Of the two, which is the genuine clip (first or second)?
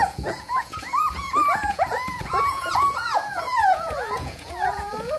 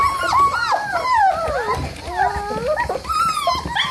second